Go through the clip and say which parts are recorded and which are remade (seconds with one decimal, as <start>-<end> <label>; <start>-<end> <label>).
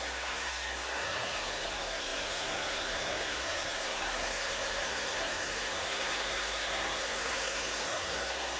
0.0-8.6 remade